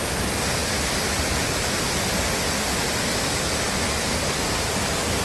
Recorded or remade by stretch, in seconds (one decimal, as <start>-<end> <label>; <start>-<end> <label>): 0.0-0.6 recorded; 0.6-2.0 remade; 2.0-5.2 recorded